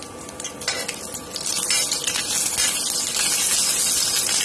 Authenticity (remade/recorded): recorded